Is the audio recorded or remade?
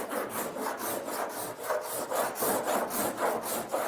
recorded